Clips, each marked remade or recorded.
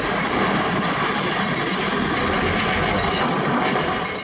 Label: recorded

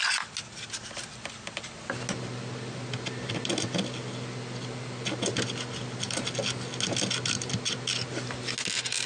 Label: recorded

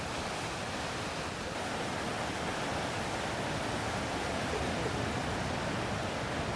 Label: recorded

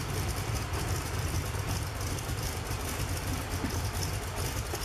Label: remade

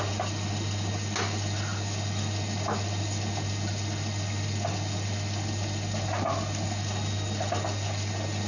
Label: recorded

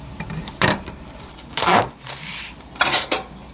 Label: remade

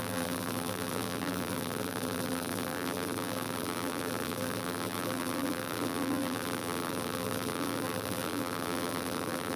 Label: remade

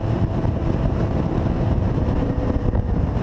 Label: remade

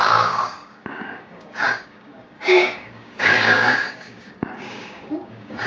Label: remade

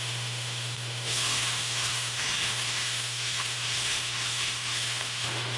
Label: remade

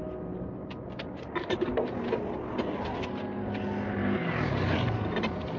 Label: recorded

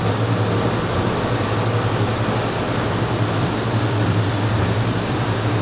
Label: remade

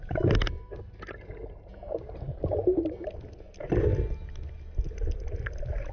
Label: recorded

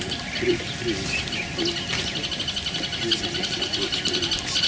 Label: recorded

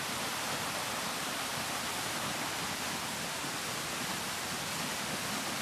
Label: recorded